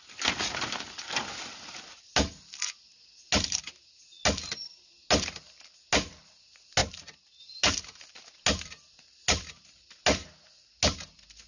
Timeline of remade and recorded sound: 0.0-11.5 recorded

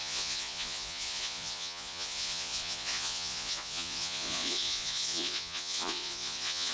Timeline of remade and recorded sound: 0.0-6.7 remade

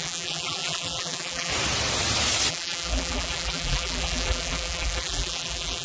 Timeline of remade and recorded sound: 0.0-1.5 remade; 1.5-2.5 recorded; 2.5-5.8 remade